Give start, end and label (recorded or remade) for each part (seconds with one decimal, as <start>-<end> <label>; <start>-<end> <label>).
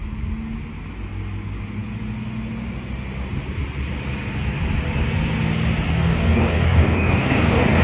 0.0-6.0 recorded; 6.0-7.8 remade